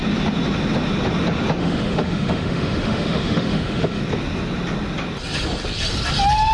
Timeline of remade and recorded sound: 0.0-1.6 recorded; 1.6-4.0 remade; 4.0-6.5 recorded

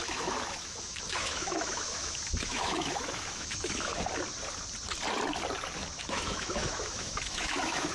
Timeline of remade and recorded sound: 0.0-3.9 remade; 3.9-6.0 recorded; 6.0-7.9 remade

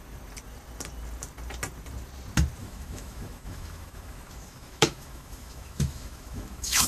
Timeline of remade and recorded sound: 0.0-2.6 recorded; 2.6-6.9 remade

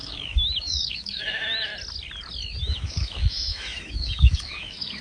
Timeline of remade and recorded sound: 0.0-1.7 remade; 1.7-2.6 recorded; 2.6-5.0 remade

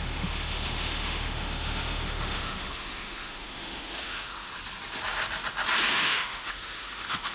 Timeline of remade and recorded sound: 0.0-4.5 remade; 4.5-5.9 recorded; 5.9-7.3 remade

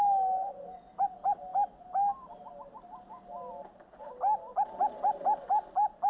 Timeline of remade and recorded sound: 0.0-6.1 recorded

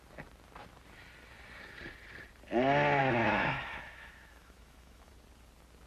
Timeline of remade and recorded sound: 0.0-3.0 recorded; 3.0-5.1 remade; 5.1-5.9 recorded

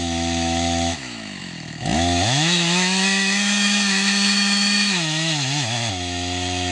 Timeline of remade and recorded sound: 0.0-6.7 remade